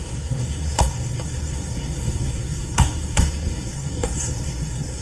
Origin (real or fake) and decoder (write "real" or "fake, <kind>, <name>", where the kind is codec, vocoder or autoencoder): fake, codec, SNAC